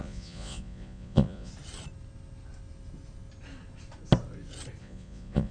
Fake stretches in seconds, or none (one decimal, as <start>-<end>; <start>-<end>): 0.0-1.5; 4.8-5.5